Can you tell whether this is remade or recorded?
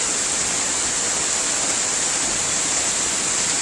recorded